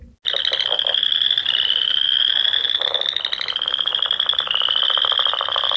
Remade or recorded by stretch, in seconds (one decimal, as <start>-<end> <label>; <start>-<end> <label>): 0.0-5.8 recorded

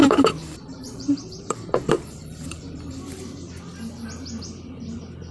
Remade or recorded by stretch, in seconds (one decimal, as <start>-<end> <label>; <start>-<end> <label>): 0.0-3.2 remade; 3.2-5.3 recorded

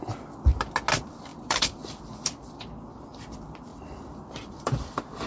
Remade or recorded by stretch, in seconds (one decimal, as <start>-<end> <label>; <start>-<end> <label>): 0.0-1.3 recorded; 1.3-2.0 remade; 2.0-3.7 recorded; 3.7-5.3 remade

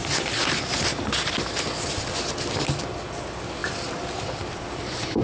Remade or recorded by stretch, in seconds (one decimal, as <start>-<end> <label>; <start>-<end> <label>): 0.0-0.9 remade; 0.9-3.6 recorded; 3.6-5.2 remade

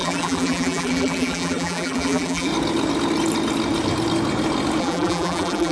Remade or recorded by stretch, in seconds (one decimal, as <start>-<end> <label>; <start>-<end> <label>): 0.0-2.5 remade; 2.5-4.8 recorded; 4.8-5.7 remade

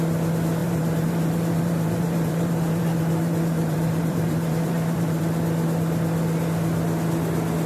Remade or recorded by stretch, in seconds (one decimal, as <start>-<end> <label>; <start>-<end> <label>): 0.0-0.6 recorded; 0.6-5.2 remade; 5.2-7.7 recorded

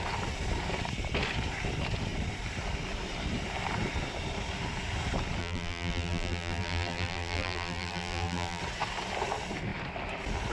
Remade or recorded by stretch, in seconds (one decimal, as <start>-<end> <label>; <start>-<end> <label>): 0.0-5.4 recorded; 5.4-8.6 remade; 8.6-10.5 recorded

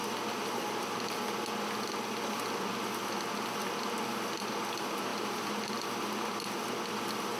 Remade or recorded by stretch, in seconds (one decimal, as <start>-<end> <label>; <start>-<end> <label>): 0.0-5.1 recorded; 5.1-5.7 remade; 5.7-7.4 recorded